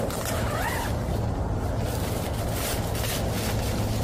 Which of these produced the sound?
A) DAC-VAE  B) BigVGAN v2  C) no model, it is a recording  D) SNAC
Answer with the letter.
C